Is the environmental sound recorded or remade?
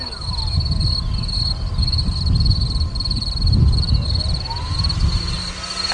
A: recorded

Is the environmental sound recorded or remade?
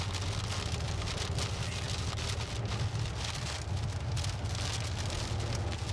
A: recorded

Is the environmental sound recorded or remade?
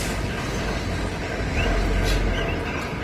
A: recorded